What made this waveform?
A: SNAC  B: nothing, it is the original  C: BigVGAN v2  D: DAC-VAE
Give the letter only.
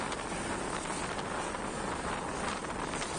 B